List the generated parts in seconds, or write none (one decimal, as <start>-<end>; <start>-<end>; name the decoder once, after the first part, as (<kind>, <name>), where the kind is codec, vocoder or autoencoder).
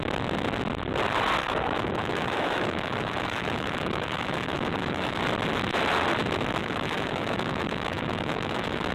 1.4-5.2 (autoencoder, DAC-VAE); 6.6-8.9